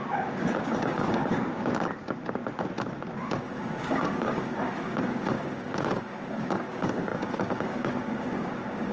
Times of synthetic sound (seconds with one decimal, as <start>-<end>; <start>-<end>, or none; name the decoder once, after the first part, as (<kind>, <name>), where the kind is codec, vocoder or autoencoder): 0.0-2.4 (codec, DAC); 3.1-8.9